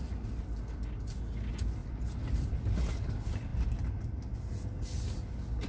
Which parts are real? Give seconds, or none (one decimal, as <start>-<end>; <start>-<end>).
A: 0.0-5.7